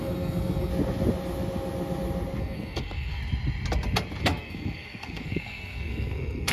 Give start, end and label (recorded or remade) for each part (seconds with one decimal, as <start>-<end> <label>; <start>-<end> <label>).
0.0-0.7 remade; 0.7-2.4 recorded; 2.4-3.2 remade; 3.2-4.2 recorded; 4.2-6.5 remade